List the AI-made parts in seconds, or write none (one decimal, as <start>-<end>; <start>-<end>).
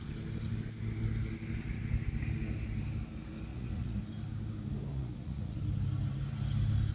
3.5-4.0; 4.9-5.6